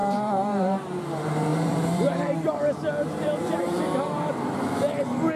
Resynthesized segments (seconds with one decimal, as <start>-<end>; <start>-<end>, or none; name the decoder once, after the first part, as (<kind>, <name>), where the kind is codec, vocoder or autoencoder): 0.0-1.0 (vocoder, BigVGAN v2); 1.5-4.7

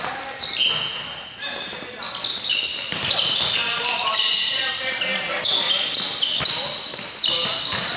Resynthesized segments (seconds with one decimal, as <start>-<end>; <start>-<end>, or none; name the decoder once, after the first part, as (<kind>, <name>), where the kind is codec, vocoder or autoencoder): 2.7-5.0 (vocoder, BigVGAN v2); 6.9-8.0

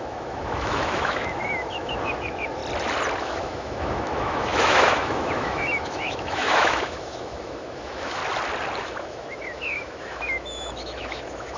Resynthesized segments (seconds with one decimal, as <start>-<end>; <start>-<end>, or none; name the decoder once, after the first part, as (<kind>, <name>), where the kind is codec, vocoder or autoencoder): 0.0-2.6 (autoencoder, DAC-VAE); 3.2-8.2; 8.8-11.6

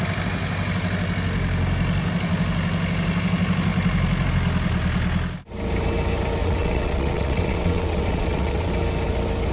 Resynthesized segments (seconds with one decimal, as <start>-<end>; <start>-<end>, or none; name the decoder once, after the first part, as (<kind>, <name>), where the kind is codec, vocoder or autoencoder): 6.4-8.7 (vocoder, WaveNeXt)

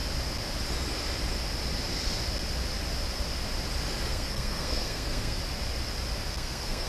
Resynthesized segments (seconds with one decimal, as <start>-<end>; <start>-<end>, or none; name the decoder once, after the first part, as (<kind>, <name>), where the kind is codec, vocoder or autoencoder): 4.1-5.4 (codec, SNAC); 6.3-6.9

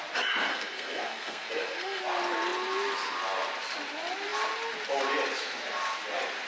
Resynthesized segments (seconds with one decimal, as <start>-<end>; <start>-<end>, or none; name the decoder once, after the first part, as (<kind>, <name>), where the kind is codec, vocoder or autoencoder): 0.5-2.0 (codec, SNAC)

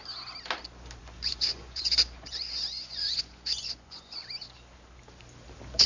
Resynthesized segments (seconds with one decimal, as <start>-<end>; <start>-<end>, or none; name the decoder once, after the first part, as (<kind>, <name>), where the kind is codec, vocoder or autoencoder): 1.0-4.2 (vocoder, Vocos)